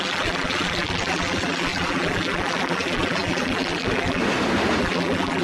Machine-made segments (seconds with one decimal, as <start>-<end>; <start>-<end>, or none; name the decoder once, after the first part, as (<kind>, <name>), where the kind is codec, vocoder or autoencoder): 0.0-4.2 (vocoder, BigVGAN v2); 4.8-5.4